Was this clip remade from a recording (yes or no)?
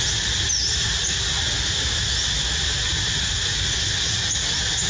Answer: no